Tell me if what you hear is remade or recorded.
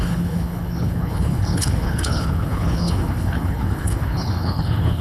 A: remade